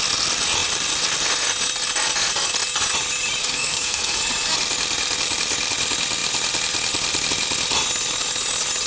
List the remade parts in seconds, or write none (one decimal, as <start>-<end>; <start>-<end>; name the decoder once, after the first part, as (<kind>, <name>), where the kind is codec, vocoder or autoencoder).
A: 3.4-4.2 (codec, SNAC)